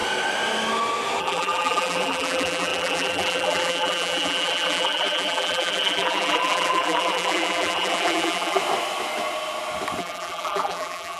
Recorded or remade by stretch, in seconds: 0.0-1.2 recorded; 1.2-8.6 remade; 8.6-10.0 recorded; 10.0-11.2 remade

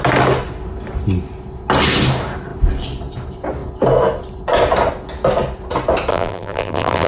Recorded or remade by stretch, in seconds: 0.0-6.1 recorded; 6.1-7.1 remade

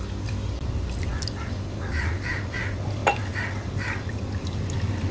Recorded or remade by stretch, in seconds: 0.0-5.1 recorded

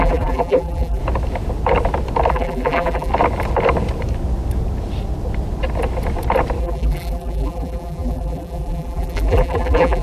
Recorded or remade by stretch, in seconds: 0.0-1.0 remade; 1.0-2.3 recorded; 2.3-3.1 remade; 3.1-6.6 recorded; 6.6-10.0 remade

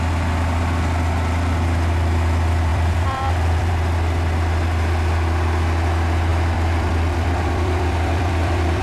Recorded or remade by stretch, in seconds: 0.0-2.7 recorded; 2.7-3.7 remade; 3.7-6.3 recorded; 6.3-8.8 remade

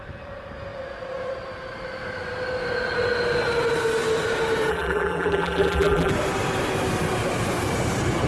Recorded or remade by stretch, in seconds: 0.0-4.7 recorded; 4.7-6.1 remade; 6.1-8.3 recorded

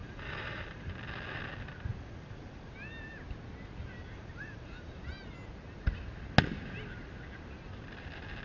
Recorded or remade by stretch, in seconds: 0.0-0.9 remade; 0.9-1.9 recorded; 1.9-2.7 remade; 2.7-4.0 recorded; 4.0-5.0 remade; 5.0-8.4 recorded